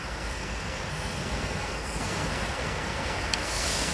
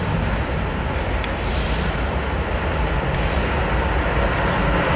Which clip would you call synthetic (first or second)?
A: first